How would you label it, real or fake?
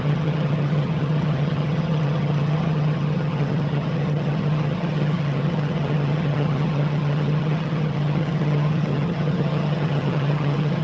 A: fake